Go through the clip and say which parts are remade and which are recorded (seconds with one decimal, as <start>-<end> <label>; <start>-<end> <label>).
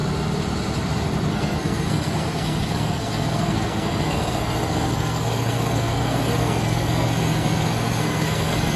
0.0-1.3 recorded; 1.3-8.8 remade